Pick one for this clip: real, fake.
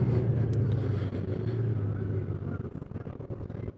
real